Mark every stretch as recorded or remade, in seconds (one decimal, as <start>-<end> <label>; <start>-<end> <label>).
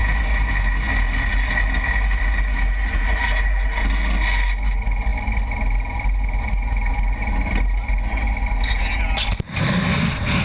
0.0-10.4 recorded